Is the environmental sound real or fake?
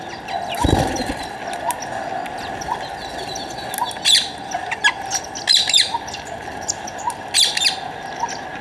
real